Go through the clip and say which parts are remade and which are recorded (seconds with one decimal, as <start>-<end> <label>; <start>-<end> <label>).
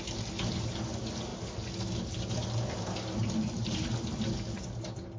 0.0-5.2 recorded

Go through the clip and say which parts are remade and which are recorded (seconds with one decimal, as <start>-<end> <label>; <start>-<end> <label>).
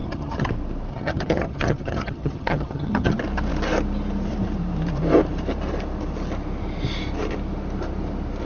0.0-0.5 remade; 0.5-0.9 recorded; 0.9-3.1 remade; 3.1-8.5 recorded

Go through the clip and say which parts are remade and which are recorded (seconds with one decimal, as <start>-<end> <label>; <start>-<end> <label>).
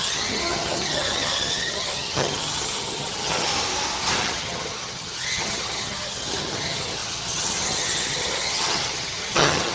0.0-3.5 remade; 3.5-4.2 recorded; 4.2-9.7 remade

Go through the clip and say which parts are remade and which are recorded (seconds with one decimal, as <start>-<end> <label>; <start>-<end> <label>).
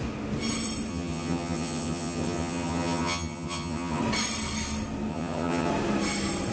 0.0-0.9 recorded; 0.9-4.0 remade; 4.0-5.1 recorded; 5.1-5.7 remade; 5.7-6.5 recorded